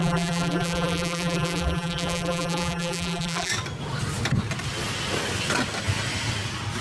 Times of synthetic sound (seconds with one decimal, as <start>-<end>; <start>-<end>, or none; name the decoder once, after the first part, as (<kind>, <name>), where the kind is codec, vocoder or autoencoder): 0.0-3.5 (vocoder, BigVGAN v2)